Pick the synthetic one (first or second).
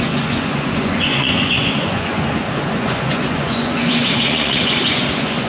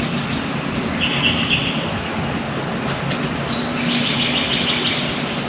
first